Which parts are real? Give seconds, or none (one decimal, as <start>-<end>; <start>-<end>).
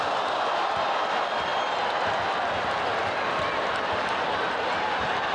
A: 0.0-5.3